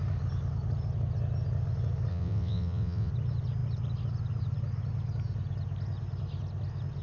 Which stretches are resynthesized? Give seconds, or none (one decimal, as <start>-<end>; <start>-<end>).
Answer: 2.1-3.1